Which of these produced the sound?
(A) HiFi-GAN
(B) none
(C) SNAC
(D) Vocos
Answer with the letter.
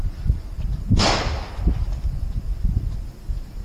B